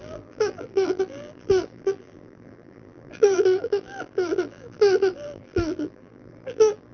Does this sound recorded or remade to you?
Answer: remade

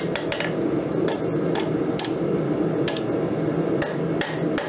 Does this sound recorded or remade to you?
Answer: recorded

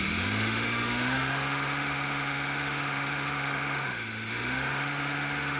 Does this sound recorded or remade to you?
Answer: remade